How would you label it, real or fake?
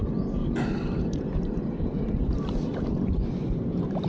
fake